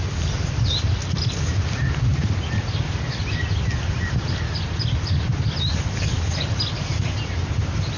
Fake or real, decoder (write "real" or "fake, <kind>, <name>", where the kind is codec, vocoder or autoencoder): real